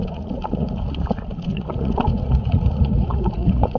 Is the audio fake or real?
fake